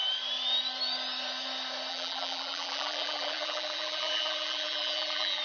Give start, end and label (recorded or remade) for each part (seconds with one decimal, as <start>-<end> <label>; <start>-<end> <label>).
0.0-1.9 recorded; 1.9-5.4 remade